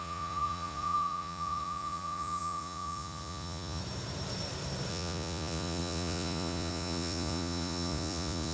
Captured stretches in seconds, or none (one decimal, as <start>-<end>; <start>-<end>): 3.8-4.9